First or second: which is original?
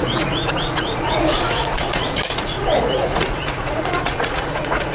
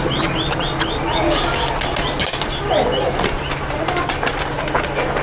second